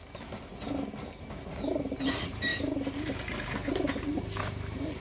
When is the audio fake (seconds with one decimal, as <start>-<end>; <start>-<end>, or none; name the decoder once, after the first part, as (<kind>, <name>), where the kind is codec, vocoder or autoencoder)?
0.0-0.5 (vocoder, BigVGAN v2); 1.7-5.0